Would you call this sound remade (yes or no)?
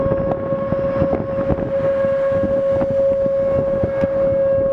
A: no